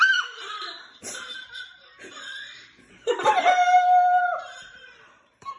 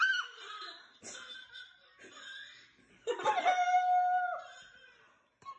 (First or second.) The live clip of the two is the second